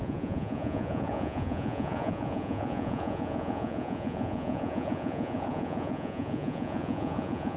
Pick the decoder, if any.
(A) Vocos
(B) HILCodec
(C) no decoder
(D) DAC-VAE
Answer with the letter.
A